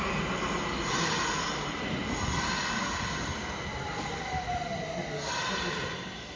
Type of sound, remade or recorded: recorded